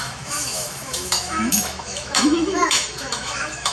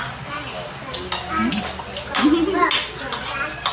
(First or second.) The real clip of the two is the second